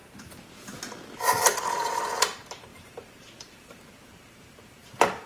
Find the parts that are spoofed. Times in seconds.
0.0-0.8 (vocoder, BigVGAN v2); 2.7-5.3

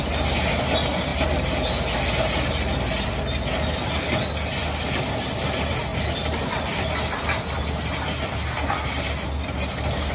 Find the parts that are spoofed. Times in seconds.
none

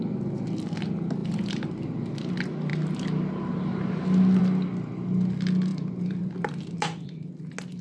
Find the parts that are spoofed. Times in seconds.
1.2-1.7 (vocoder, BigVGAN v2); 5.7-7.3